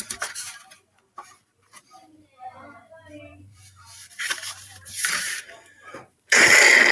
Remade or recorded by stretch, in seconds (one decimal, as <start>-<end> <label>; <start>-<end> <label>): 0.0-6.9 remade